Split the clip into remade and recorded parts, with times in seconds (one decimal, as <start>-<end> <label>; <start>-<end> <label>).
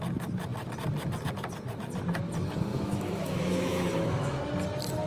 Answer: 0.0-2.7 recorded; 2.7-4.4 remade; 4.4-5.1 recorded